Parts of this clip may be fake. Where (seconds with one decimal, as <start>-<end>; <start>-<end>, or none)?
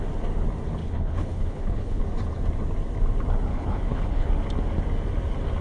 0.8-2.0; 3.5-4.3